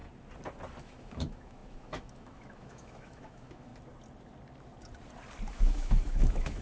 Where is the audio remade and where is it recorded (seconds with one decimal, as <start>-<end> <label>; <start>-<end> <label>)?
0.0-0.8 recorded; 0.8-3.7 remade; 3.7-5.5 recorded; 5.5-6.6 remade